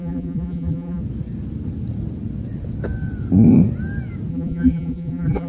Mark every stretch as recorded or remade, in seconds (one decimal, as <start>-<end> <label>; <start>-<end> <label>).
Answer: 0.0-1.0 remade; 1.0-4.3 recorded; 4.3-5.5 remade